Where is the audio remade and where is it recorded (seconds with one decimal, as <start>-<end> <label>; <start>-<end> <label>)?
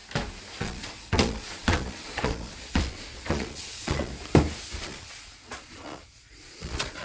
0.0-0.6 recorded; 0.6-4.1 remade; 4.1-4.8 recorded; 4.8-7.0 remade